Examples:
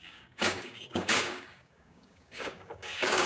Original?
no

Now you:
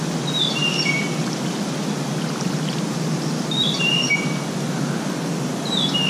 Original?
yes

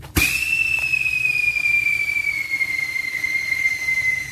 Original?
no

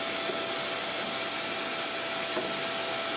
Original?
yes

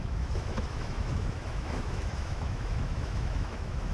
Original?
no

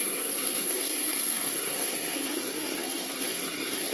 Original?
no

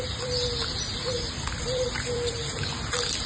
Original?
no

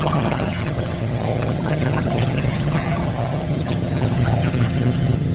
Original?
no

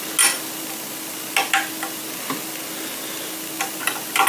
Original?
yes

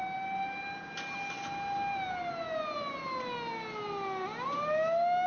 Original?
yes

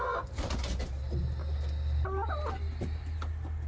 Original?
yes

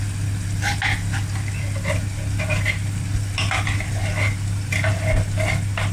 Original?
yes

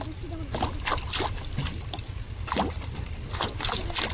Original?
yes